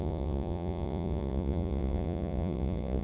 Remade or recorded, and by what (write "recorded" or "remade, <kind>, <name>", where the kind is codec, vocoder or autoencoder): remade, vocoder, Vocos